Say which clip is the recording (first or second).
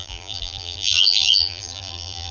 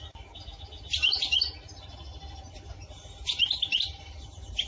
second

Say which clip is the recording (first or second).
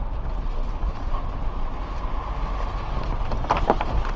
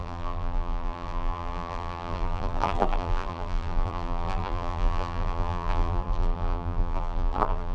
first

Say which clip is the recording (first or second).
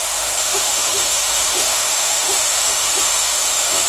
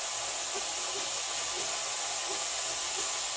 second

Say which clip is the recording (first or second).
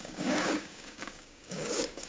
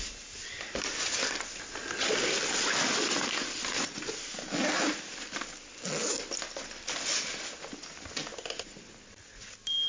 second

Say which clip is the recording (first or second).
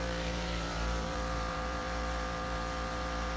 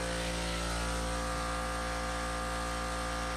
second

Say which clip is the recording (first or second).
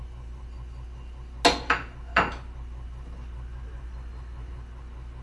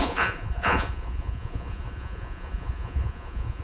first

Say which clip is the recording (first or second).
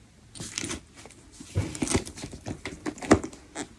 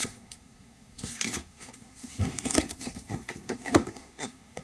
first